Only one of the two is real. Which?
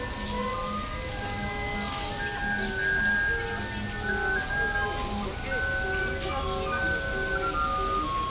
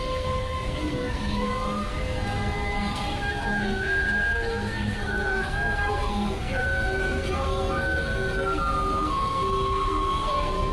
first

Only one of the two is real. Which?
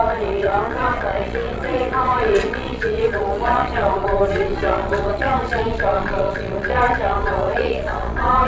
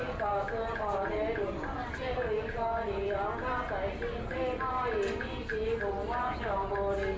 second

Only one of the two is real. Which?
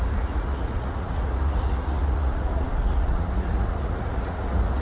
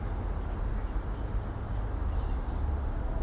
second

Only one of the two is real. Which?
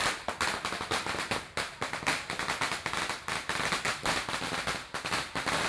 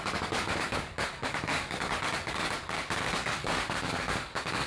first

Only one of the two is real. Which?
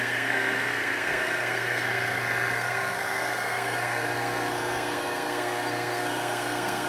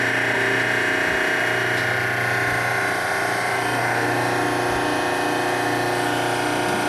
second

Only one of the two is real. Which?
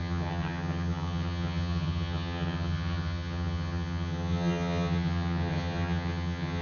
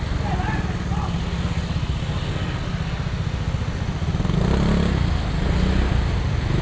second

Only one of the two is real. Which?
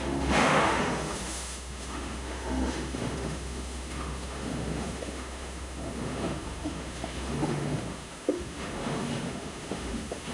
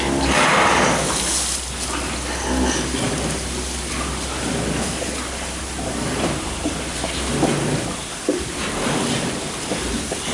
second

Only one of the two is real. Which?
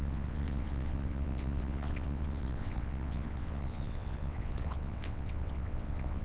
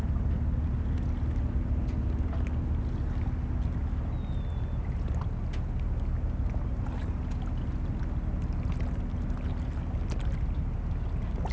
second